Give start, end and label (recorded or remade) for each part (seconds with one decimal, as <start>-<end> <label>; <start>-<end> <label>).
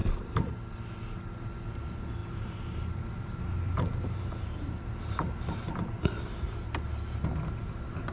0.0-0.5 remade; 0.5-2.2 recorded; 2.2-6.8 remade; 6.8-8.1 recorded